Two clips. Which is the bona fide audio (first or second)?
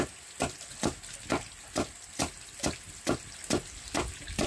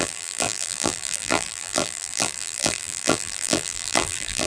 first